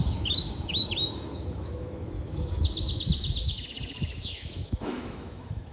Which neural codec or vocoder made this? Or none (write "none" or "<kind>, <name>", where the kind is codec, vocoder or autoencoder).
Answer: autoencoder, DAC-VAE